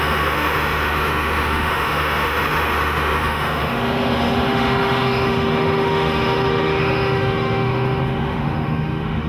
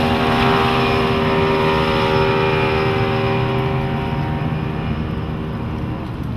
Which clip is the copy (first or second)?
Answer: first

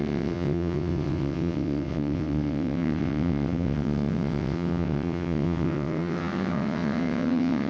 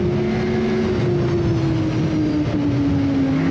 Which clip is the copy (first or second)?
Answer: first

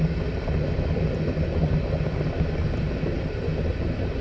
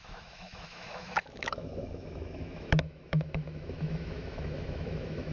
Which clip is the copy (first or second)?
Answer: second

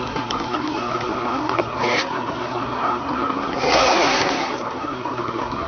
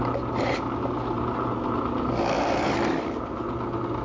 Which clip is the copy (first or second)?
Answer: first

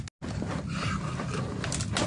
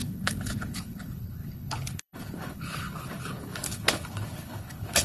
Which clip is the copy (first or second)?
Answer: second